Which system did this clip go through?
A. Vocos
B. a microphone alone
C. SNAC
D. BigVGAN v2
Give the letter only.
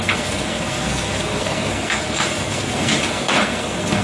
C